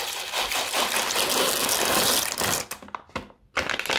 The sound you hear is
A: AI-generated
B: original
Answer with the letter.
B